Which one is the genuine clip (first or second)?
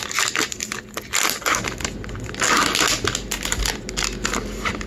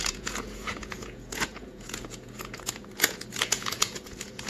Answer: first